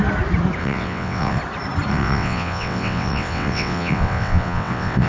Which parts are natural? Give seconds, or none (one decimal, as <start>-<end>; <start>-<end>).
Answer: 0.0-0.6; 1.4-1.9